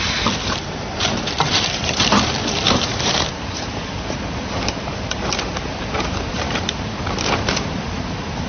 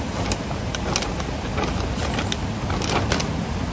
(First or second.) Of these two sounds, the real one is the second